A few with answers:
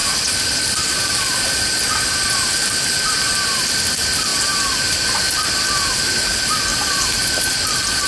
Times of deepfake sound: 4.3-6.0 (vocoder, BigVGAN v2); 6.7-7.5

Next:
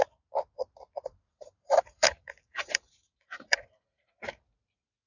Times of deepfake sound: 1.3-4.4 (vocoder, BigVGAN v2)

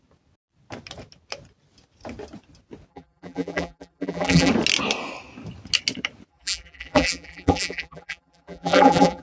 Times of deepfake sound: 2.9-4.5 (vocoder, BigVGAN v2); 6.3-9.2

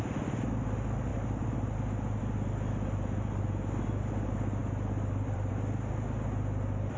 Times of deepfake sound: 4.6-5.5 (vocoder, BigVGAN v2)